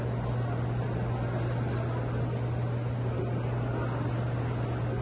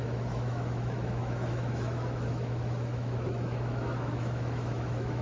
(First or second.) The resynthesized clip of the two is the second